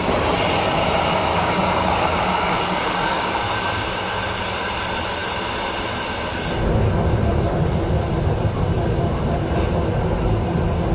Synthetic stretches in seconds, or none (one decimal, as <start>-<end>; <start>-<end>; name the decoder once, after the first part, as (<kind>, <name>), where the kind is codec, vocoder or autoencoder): 1.3-3.3 (codec, DAC)